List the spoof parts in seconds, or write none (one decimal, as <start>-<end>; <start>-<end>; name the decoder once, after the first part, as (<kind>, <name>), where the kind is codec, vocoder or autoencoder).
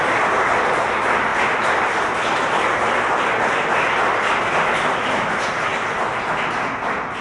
5.7-6.7 (vocoder, BigVGAN v2)